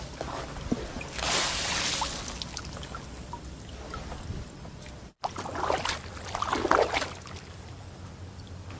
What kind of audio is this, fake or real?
real